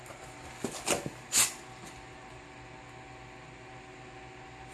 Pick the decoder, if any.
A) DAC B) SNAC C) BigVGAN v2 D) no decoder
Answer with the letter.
D